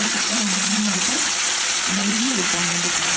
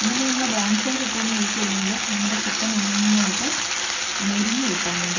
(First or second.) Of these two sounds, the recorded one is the second